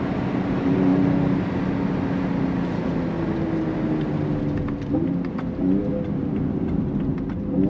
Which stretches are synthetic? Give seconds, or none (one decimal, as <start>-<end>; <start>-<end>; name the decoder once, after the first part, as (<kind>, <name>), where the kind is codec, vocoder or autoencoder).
none